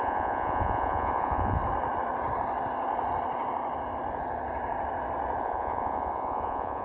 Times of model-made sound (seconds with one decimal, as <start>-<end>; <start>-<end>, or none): 0.0-1.6; 5.4-6.8